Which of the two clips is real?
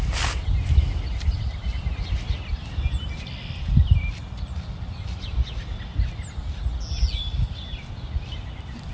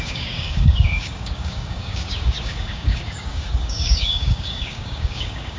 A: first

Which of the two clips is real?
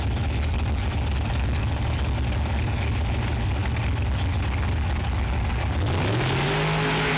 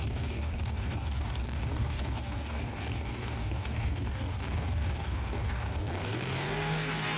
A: first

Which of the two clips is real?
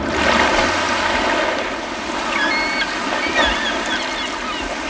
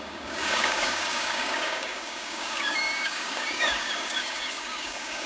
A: first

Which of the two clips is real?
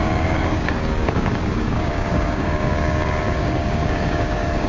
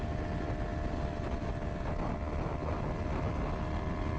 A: second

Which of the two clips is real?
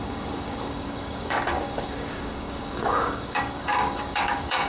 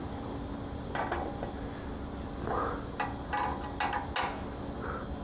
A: second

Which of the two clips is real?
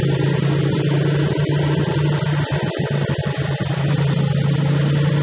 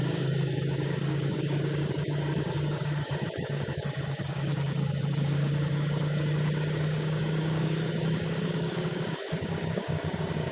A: first